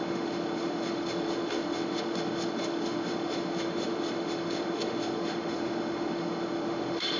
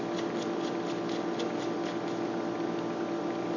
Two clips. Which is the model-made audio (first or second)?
first